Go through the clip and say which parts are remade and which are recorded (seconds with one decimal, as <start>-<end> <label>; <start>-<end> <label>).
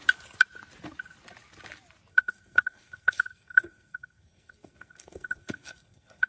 0.0-2.1 recorded; 2.1-6.3 remade